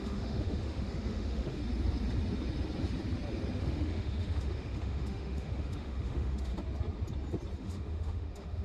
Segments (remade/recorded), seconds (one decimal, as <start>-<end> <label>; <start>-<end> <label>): 0.0-1.6 remade; 1.6-3.6 recorded; 3.6-6.5 remade; 6.5-7.6 recorded; 7.6-8.6 remade